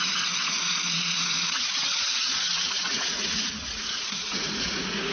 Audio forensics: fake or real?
fake